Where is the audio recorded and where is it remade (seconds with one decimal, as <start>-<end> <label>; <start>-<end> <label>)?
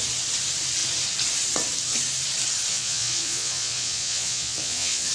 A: 0.0-2.7 recorded; 2.7-5.1 remade